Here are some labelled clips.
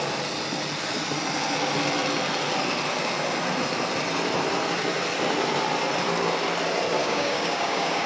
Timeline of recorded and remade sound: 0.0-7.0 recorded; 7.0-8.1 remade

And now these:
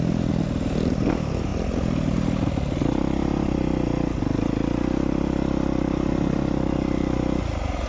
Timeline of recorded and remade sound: 0.0-7.9 recorded

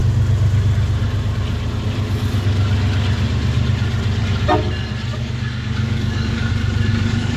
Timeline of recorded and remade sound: 0.0-5.1 recorded; 5.1-6.5 remade; 6.5-6.9 recorded; 6.9-7.4 remade

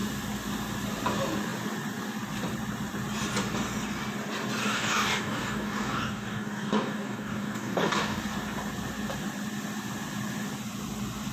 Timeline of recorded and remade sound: 0.0-4.6 recorded; 4.6-8.2 remade; 8.2-11.3 recorded